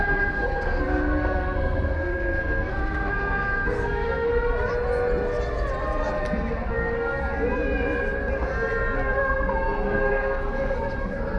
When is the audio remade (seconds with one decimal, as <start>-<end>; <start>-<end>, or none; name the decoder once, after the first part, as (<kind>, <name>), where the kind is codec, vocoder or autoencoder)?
0.0-4.3 (codec, SNAC); 6.7-7.2; 9.2-11.4